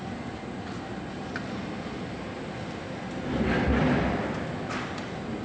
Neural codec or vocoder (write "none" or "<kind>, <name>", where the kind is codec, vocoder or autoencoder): none